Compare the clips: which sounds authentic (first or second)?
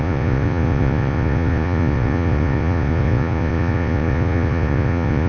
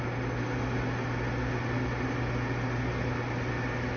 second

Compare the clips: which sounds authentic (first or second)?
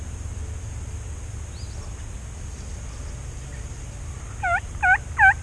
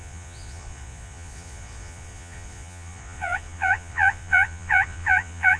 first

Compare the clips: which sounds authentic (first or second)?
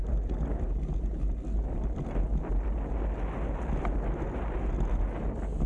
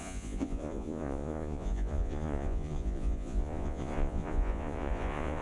first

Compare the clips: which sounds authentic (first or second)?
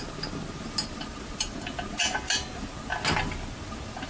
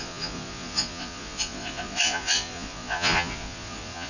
first